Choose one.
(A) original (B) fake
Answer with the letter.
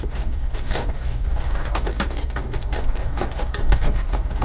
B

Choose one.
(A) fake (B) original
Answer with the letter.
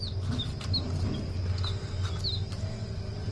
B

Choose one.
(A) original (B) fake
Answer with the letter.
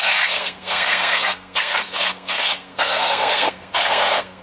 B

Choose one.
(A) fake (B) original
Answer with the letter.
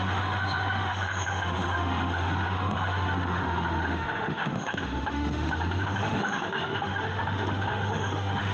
A